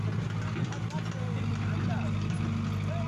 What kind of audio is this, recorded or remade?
recorded